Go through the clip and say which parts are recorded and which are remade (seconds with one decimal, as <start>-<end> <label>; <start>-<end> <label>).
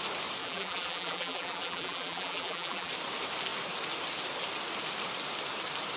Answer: 0.0-0.4 recorded; 0.4-2.9 remade; 2.9-6.0 recorded